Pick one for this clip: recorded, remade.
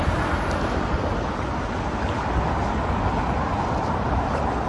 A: recorded